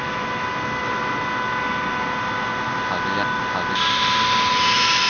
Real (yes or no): yes